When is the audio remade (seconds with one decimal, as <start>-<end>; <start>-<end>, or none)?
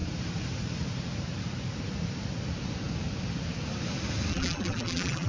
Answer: 4.3-5.3